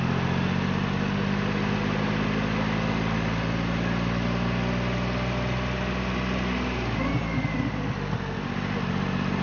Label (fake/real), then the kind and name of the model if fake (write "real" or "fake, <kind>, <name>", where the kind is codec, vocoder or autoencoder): real